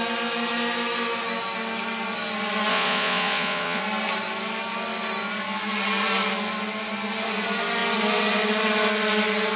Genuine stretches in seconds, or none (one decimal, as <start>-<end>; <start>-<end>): 0.0-2.7; 3.8-9.6